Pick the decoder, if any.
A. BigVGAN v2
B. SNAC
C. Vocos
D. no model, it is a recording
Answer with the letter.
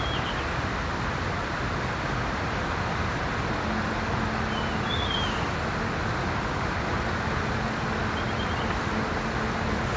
D